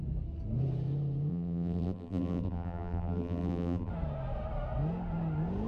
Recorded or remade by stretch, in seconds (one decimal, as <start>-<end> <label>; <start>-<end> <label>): 0.0-1.3 recorded; 1.3-3.9 remade; 3.9-5.7 recorded